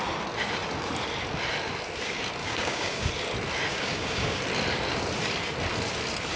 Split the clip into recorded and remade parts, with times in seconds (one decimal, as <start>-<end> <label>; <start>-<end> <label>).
0.0-2.4 recorded; 2.4-3.1 remade; 3.1-3.7 recorded; 3.7-4.4 remade; 4.4-6.4 recorded